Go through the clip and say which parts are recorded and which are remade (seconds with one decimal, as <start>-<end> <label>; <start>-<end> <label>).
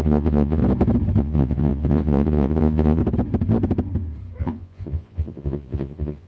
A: 0.0-0.6 remade; 0.6-1.2 recorded; 1.2-3.0 remade; 3.0-4.4 recorded; 4.4-6.3 remade